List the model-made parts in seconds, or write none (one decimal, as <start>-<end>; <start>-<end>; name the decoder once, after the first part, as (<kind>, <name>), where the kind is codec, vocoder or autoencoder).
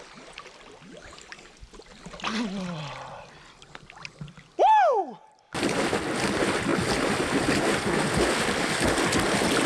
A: none